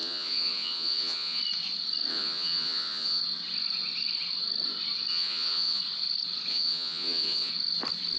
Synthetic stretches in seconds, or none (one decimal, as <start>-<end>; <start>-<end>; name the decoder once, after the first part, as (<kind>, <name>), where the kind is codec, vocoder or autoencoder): 0.0-1.4 (vocoder, Vocos); 2.1-3.2; 5.1-5.8; 6.5-7.5